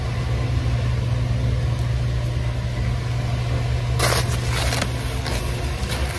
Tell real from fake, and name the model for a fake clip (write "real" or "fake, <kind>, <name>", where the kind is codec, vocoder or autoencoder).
real